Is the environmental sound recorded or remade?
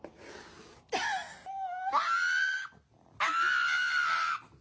recorded